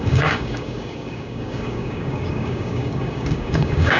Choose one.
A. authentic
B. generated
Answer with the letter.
B